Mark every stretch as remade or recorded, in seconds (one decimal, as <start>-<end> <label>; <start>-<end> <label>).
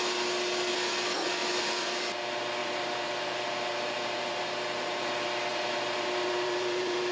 0.0-2.6 recorded; 2.6-5.1 remade; 5.1-5.5 recorded; 5.5-7.1 remade